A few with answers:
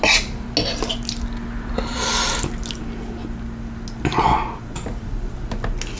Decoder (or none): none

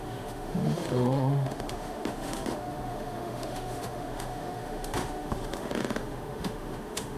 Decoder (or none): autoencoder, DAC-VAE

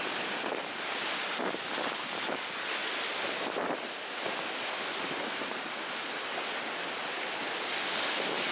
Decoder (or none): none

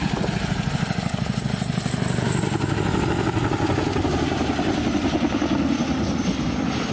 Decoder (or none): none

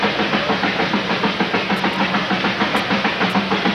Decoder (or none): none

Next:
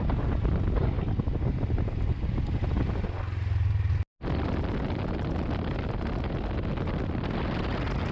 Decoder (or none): none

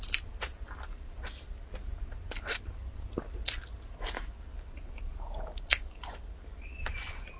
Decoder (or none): none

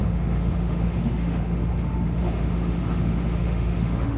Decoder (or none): autoencoder, DAC-VAE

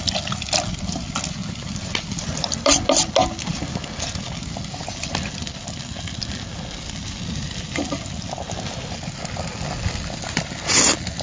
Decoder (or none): none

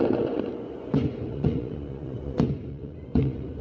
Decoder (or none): vocoder, Vocos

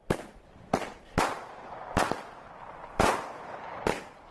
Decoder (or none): none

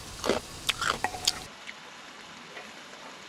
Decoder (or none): none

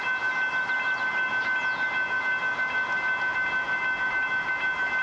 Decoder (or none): none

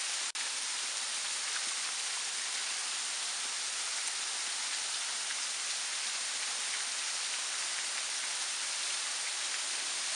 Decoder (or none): none